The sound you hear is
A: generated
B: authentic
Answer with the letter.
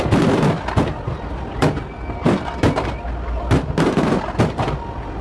B